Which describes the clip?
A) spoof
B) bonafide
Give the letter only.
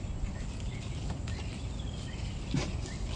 B